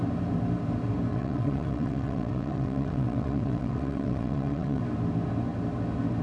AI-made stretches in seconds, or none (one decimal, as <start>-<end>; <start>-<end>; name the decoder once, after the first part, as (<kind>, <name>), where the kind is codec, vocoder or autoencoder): 1.1-4.8 (vocoder, WaveNeXt)